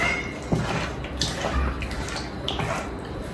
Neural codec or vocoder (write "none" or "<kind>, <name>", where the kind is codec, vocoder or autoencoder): none